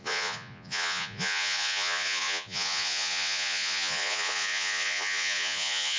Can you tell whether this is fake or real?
fake